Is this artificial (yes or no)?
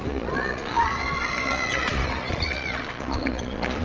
yes